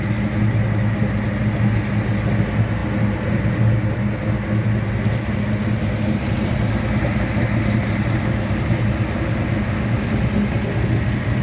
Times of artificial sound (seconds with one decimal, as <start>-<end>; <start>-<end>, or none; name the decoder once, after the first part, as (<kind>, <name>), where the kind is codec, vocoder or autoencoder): none